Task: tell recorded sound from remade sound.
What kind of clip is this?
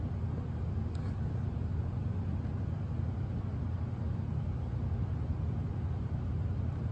recorded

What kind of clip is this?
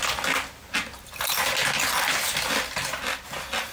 recorded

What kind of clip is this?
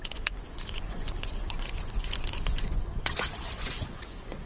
remade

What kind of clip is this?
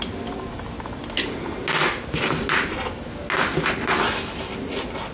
recorded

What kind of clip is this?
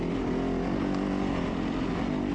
recorded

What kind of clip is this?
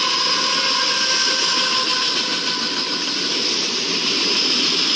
recorded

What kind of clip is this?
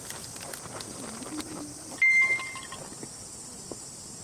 recorded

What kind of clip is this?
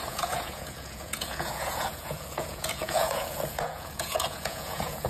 remade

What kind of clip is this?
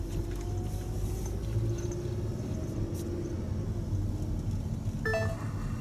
recorded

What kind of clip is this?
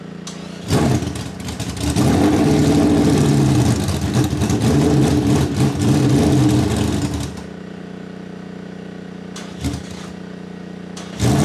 recorded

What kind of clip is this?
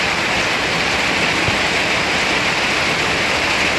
recorded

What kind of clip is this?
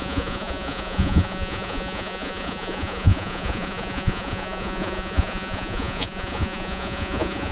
remade